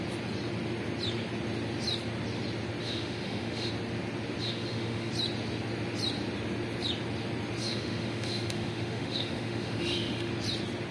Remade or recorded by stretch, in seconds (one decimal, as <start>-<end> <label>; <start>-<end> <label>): 0.0-2.8 recorded; 2.8-3.7 remade; 3.7-4.4 recorded; 4.4-5.1 remade; 5.1-7.6 recorded; 7.6-10.3 remade; 10.3-10.9 recorded

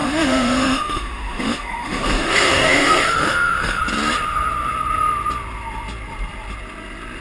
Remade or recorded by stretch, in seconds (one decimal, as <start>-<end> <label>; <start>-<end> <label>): 0.0-3.8 remade; 3.8-7.2 recorded